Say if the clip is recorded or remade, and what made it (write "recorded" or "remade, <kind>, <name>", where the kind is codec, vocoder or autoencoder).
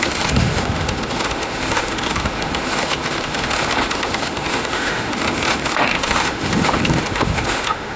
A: remade, autoencoder, DAC-VAE